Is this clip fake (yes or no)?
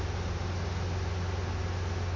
no